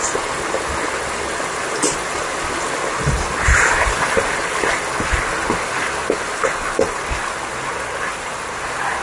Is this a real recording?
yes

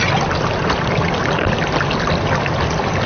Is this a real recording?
yes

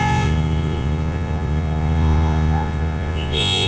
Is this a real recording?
no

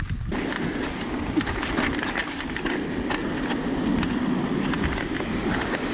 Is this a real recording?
yes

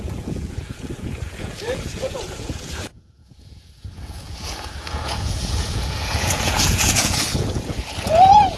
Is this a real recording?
no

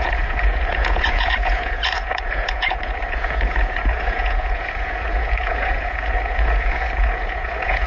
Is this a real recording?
no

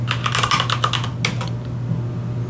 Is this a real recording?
yes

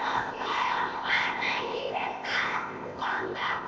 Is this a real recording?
no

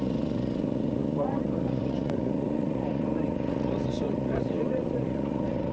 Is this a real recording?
no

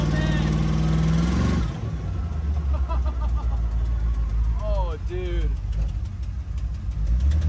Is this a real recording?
yes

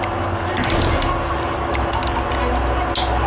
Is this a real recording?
yes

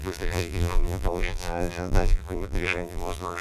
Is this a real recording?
no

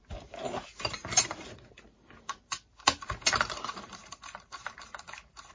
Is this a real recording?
no